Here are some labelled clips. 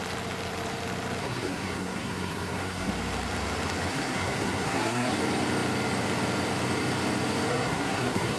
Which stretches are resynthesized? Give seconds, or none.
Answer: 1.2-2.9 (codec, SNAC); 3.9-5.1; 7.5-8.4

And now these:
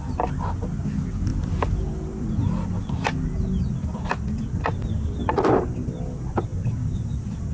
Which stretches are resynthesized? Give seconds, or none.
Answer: 1.3-5.7 (vocoder, BigVGAN v2)